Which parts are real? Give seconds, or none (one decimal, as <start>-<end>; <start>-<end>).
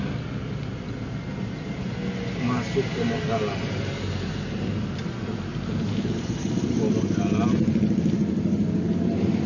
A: 0.0-9.5